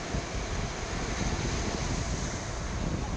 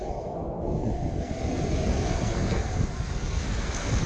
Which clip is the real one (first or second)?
first